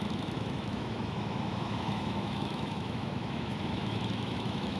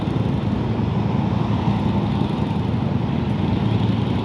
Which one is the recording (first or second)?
second